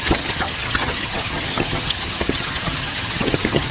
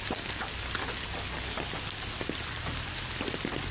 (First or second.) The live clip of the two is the second